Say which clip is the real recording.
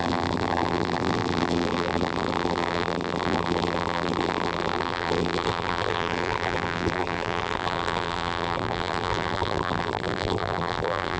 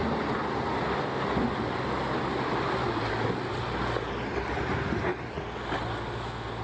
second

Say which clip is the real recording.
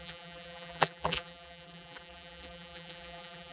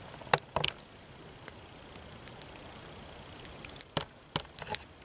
second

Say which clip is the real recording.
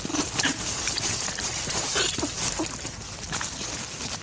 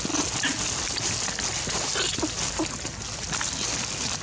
second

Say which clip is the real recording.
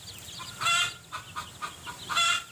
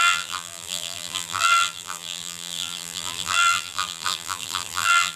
first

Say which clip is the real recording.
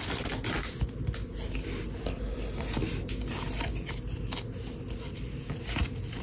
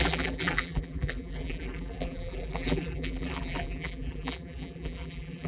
first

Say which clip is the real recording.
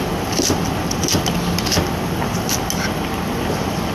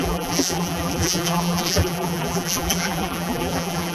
first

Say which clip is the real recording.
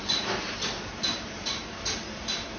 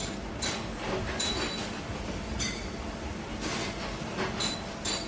second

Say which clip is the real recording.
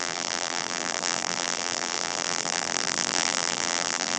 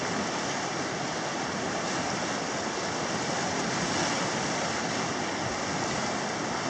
second